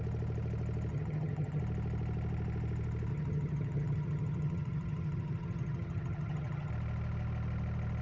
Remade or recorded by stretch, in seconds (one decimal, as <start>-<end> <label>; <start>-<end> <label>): 0.0-0.9 recorded; 0.9-1.6 remade; 1.6-3.1 recorded; 3.1-6.7 remade; 6.7-8.0 recorded